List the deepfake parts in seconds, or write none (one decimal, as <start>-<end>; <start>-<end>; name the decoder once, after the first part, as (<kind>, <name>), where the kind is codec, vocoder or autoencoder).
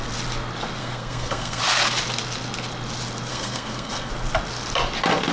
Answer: 0.8-1.6 (codec, SNAC); 3.3-4.1